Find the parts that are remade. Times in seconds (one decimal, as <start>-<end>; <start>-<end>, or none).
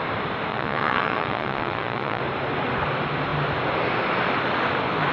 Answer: 0.5-2.2